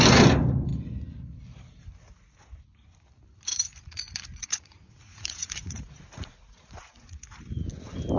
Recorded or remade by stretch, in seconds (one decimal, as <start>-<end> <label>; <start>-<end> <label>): 0.0-3.5 recorded; 3.5-7.4 remade; 7.4-8.2 recorded